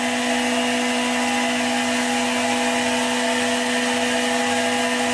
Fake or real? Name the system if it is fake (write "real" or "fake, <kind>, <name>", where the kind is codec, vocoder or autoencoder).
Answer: real